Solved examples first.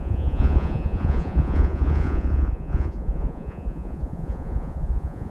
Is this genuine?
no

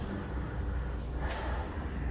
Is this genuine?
yes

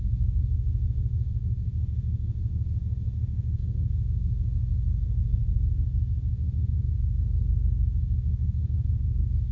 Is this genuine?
no